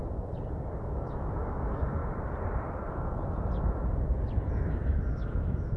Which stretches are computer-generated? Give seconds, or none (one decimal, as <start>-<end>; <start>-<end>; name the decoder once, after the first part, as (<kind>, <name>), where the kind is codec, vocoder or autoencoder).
0.8-2.0 (autoencoder, DAC-VAE); 4.5-5.8